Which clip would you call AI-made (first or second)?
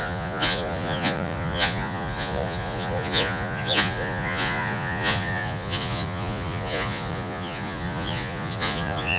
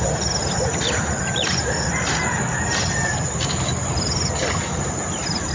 first